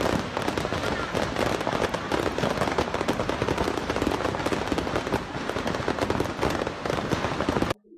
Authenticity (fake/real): real